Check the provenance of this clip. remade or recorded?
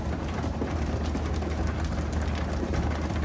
recorded